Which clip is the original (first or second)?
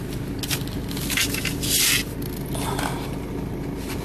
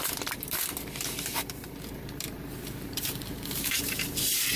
first